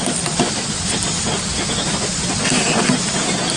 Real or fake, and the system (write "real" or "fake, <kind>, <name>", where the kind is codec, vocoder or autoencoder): real